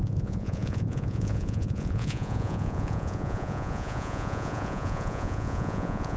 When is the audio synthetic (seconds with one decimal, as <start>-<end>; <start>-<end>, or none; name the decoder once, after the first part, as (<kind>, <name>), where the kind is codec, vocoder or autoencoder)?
0.0-6.2 (vocoder, Vocos)